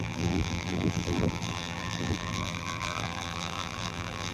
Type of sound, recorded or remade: remade